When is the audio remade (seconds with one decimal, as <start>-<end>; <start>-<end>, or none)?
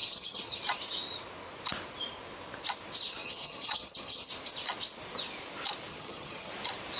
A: 0.0-0.6; 3.2-4.3; 5.9-6.5